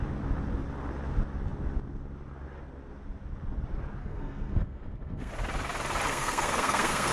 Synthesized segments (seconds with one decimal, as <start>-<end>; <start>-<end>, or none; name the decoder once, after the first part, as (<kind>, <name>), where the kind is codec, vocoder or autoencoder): 4.0-5.3 (codec, SNAC); 6.1-7.1